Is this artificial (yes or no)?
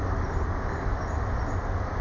no